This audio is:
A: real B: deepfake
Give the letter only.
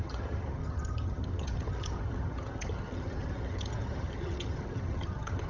B